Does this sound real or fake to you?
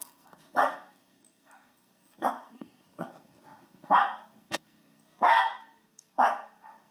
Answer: fake